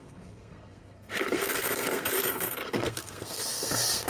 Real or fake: fake